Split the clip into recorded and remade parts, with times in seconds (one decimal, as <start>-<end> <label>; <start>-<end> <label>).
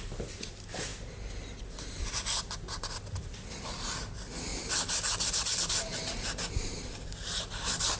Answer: 0.0-8.0 recorded